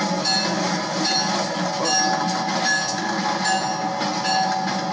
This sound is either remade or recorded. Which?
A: recorded